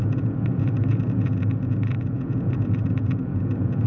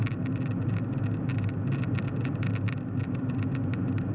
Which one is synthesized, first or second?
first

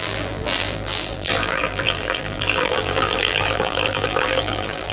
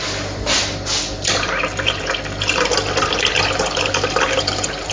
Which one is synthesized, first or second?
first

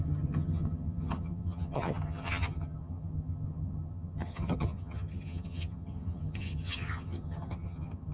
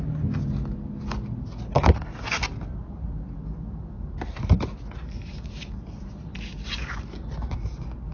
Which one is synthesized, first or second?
first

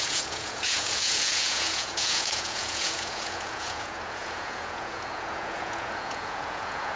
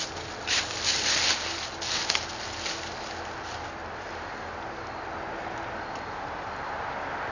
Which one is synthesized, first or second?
first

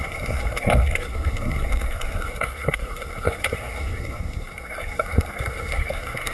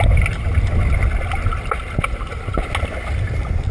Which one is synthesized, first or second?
first